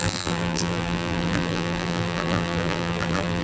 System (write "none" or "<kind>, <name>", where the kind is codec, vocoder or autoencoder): vocoder, BigVGAN v2